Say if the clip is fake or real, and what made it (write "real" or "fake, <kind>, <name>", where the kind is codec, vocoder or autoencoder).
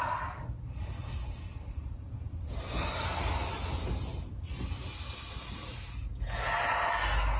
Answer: real